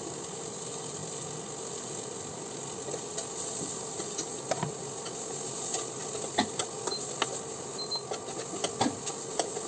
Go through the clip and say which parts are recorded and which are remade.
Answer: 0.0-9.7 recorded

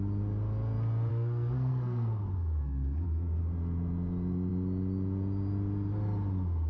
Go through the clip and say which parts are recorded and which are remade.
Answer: 0.0-1.1 recorded; 1.1-3.4 remade; 3.4-6.7 recorded

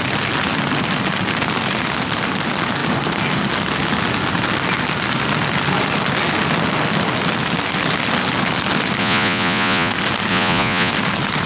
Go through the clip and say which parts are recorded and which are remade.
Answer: 0.0-9.0 recorded; 9.0-9.9 remade; 9.9-10.3 recorded; 10.3-10.9 remade; 10.9-11.5 recorded

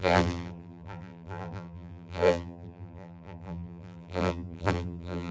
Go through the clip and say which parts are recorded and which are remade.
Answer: 0.0-5.3 remade

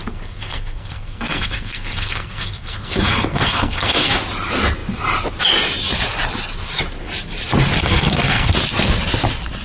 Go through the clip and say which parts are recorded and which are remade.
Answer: 0.0-4.2 remade; 4.2-7.8 recorded; 7.8-8.5 remade; 8.5-9.6 recorded

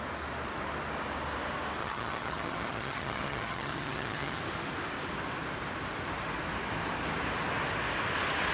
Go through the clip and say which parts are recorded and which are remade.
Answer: 0.0-1.8 recorded; 1.8-4.4 remade; 4.4-8.5 recorded

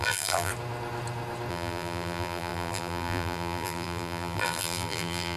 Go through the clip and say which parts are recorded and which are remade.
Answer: 0.0-0.5 remade; 0.5-1.5 recorded; 1.5-5.4 remade

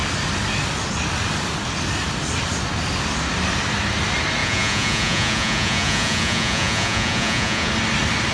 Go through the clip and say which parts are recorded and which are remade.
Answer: 0.0-4.4 recorded; 4.4-7.7 remade; 7.7-8.3 recorded